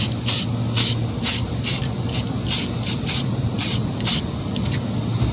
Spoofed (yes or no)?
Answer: no